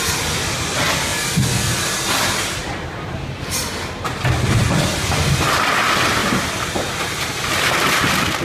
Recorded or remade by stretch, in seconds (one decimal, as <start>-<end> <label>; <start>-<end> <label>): 0.0-2.6 recorded; 2.6-3.2 remade; 3.2-6.2 recorded; 6.2-7.5 remade; 7.5-8.4 recorded